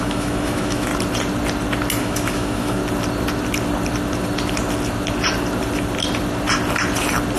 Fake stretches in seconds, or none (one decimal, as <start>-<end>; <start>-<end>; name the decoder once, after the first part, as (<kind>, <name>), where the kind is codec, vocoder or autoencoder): 0.0-0.9 (autoencoder, DAC-VAE); 2.0-2.8